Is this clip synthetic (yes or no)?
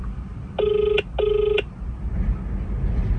no